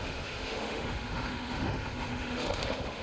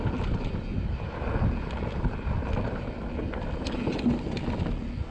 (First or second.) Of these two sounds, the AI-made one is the first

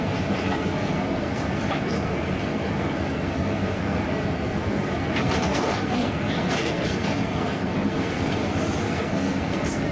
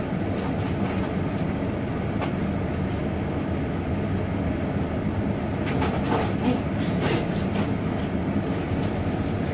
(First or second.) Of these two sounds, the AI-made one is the first